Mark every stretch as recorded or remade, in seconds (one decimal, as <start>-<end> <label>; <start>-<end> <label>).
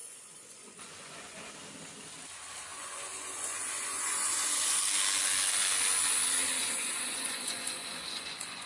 0.0-1.5 remade; 1.5-2.7 recorded; 2.7-4.8 remade; 4.8-6.6 recorded; 6.6-8.7 remade